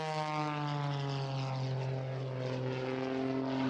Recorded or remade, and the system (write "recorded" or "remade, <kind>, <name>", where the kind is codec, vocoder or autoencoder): recorded